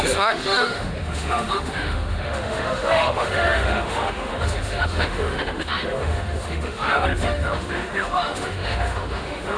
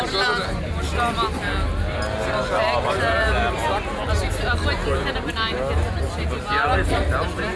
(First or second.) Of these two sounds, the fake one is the first